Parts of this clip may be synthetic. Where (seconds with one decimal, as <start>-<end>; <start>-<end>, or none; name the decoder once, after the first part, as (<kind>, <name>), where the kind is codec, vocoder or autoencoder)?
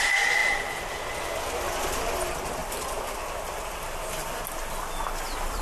2.6-4.4 (vocoder, BigVGAN v2)